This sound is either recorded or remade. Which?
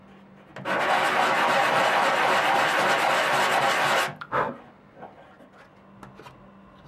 recorded